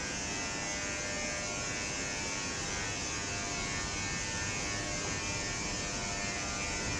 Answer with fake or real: real